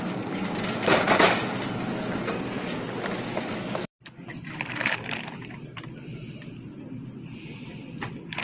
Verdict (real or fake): fake